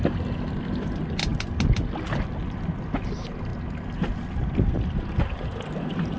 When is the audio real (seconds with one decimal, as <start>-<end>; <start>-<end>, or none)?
0.0-6.2